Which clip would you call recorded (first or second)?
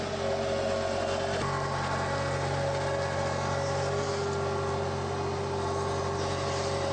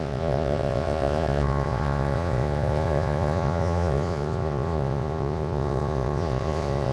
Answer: first